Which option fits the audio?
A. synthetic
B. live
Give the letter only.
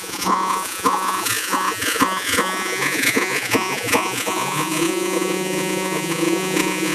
A